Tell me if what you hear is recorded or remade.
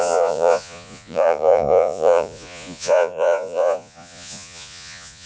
remade